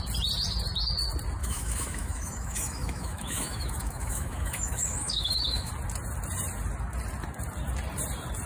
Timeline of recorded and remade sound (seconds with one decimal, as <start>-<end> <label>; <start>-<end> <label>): 0.0-1.4 recorded; 1.4-5.7 remade; 5.7-8.5 recorded